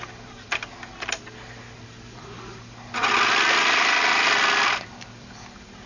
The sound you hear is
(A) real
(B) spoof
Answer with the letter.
A